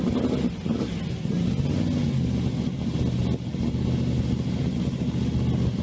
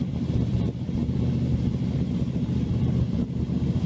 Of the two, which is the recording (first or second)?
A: first